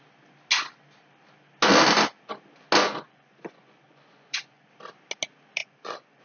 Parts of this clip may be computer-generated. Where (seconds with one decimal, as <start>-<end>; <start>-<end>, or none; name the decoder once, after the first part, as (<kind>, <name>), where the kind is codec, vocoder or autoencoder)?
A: 2.8-4.7 (vocoder, Vocos); 5.6-6.2